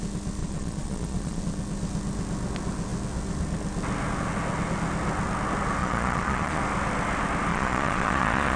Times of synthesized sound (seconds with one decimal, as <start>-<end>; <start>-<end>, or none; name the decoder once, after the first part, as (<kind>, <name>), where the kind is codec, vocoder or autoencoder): 0.4-1.4 (vocoder, Vocos); 5.8-6.6; 7.5-8.6